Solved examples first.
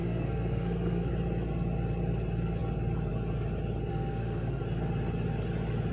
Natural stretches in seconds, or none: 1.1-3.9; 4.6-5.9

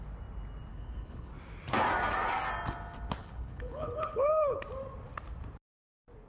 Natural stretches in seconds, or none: 0.0-0.7; 1.3-3.2; 4.6-6.3

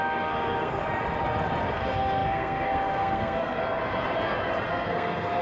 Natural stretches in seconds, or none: 0.8-1.7; 3.6-4.7

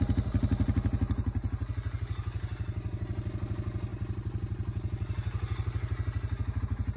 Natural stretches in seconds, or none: 0.0-7.0

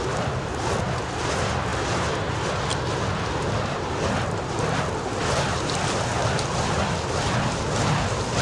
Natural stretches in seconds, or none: 0.0-8.4